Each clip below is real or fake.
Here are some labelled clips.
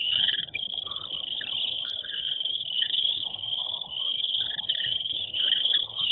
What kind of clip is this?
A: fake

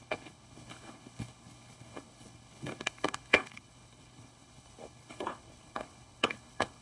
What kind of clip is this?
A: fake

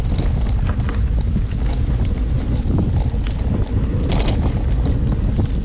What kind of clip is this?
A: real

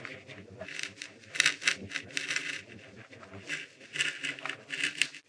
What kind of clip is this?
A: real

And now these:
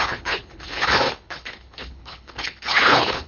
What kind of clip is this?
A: fake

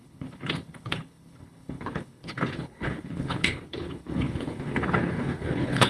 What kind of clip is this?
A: fake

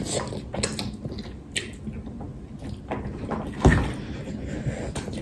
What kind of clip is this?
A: real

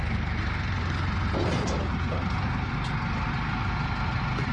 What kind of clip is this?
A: real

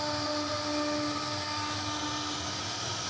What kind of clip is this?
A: real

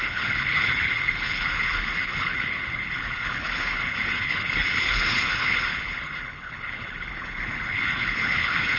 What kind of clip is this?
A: fake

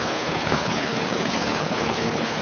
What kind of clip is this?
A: fake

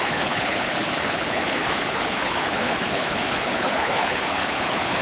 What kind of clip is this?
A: fake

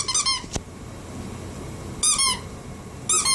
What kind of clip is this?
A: real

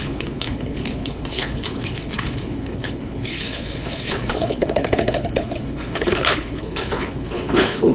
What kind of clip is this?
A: fake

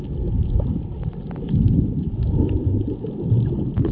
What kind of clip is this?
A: real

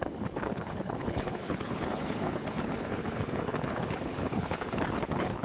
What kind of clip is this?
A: fake